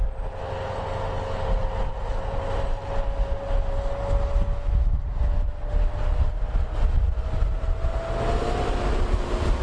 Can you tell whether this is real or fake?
real